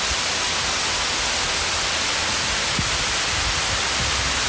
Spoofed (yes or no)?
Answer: no